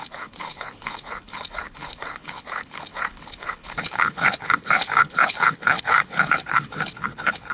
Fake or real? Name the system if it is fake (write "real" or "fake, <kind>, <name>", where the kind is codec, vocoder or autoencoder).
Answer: fake, codec, HILCodec